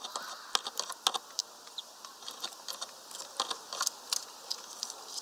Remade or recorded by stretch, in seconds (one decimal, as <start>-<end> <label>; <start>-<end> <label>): 0.0-5.2 recorded